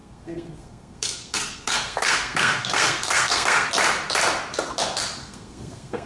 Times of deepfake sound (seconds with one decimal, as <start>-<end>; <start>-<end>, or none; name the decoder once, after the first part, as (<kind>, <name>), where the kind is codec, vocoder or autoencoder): 0.0-3.7 (codec, SNAC); 5.2-6.1